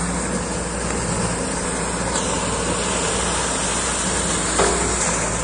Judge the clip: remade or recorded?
recorded